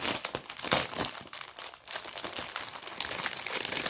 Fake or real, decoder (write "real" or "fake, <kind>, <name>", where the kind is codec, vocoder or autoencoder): real